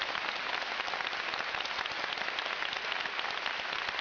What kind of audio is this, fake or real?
real